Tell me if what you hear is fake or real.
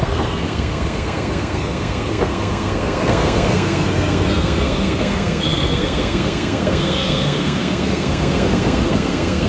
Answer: fake